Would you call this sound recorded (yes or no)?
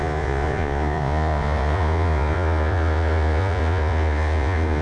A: no